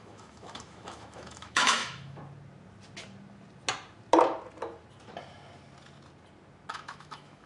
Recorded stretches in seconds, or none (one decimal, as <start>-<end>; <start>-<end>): 2.2-6.7